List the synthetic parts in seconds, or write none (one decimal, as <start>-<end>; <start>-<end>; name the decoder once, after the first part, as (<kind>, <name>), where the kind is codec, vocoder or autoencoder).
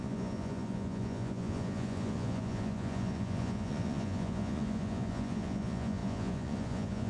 0.0-7.1 (vocoder, Vocos)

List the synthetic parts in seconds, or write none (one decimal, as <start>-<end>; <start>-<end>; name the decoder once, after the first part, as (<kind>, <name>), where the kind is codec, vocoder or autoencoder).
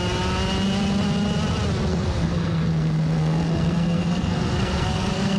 1.9-5.4 (codec, SNAC)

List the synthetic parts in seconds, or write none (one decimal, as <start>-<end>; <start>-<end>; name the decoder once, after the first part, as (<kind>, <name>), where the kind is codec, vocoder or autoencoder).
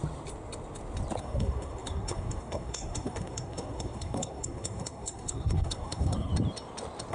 1.2-6.3 (codec, SNAC)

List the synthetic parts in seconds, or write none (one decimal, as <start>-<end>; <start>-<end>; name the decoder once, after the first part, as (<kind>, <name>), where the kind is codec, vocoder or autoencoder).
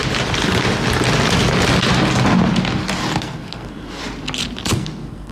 3.2-4.0 (codec, SNAC); 4.7-5.3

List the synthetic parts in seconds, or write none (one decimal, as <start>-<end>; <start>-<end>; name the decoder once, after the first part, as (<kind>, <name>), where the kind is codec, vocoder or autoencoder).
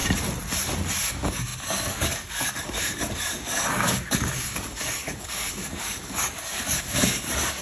1.1-7.6 (codec, DAC)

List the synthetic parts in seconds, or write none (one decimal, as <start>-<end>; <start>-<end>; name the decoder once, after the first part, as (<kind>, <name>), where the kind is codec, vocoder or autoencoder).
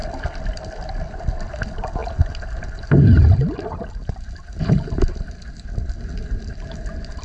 none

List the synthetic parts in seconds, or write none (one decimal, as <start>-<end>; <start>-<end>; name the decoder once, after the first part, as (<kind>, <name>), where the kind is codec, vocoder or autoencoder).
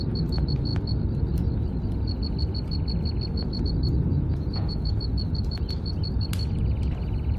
4.1-5.0 (vocoder, Vocos)